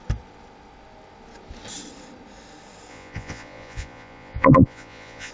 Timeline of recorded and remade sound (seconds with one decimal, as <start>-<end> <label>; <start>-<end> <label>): 0.0-2.9 recorded; 2.9-5.3 remade

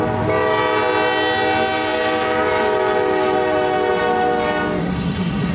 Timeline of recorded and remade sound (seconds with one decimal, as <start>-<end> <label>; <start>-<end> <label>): 0.0-4.8 recorded; 4.8-5.5 remade

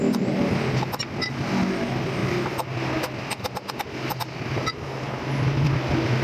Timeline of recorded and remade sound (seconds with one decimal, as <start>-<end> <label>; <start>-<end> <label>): 0.0-6.2 recorded

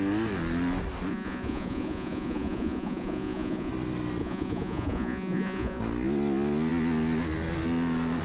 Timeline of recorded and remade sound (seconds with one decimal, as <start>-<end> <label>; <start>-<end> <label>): 0.0-1.1 recorded; 1.1-3.7 remade; 3.7-4.2 recorded; 4.2-5.8 remade; 5.8-8.2 recorded

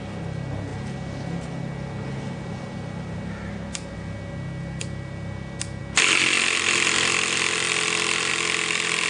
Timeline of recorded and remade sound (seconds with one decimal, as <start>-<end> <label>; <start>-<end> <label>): 0.0-9.1 recorded

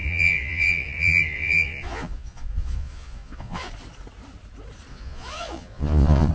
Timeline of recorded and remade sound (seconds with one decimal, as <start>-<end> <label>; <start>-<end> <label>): 0.0-3.7 remade; 3.7-4.9 recorded; 4.9-6.3 remade